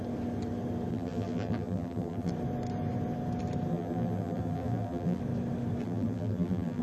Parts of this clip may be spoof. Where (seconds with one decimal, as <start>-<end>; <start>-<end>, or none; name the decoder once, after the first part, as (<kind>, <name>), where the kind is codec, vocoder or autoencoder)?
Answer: 0.9-2.3 (vocoder, BigVGAN v2); 3.7-5.2; 5.8-6.8